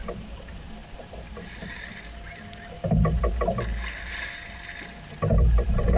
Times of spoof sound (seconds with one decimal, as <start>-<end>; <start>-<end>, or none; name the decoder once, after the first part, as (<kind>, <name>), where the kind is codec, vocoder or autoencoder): none